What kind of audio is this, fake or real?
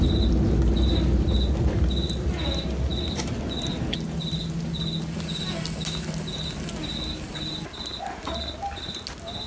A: real